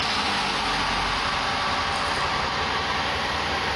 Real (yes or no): yes